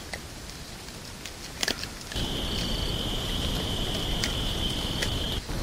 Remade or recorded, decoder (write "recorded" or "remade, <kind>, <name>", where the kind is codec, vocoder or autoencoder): recorded